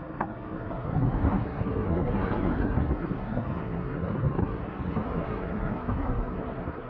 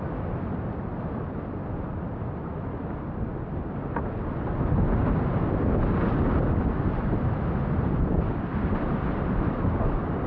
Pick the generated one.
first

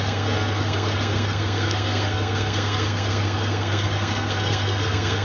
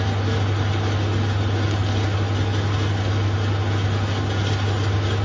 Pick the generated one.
first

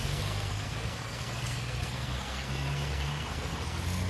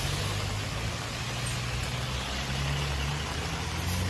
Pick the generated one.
first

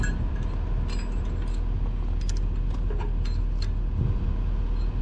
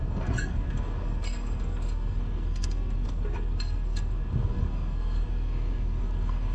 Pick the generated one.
second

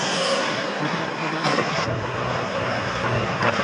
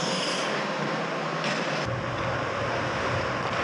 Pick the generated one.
first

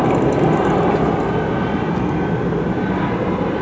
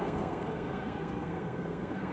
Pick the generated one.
second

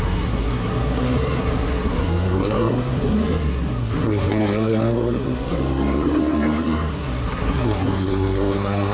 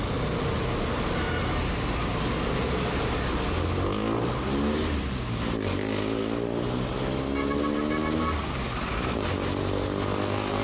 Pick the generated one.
first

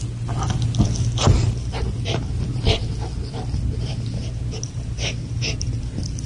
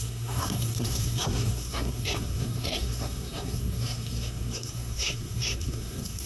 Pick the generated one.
second